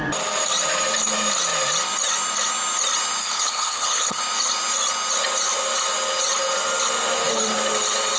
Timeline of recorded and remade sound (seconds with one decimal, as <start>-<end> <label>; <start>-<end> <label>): 0.0-3.2 recorded; 3.2-4.2 remade; 4.2-8.2 recorded